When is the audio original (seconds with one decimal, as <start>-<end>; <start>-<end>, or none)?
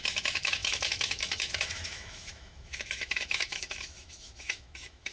none